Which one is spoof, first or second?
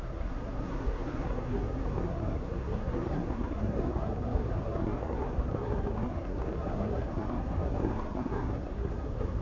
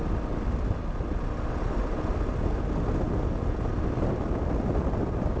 first